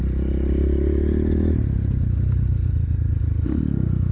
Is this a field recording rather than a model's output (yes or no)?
yes